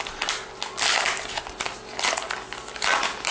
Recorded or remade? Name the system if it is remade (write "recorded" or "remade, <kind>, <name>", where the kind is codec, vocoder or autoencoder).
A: recorded